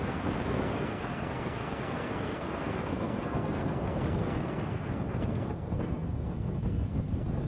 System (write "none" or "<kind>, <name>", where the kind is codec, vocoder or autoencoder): codec, SNAC